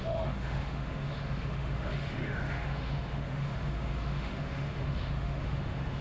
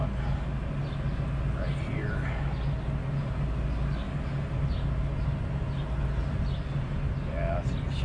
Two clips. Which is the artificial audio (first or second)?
first